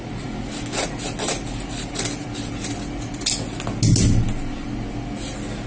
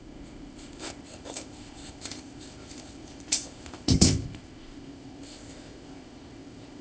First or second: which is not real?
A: second